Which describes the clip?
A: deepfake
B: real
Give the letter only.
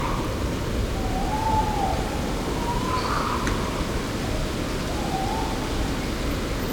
B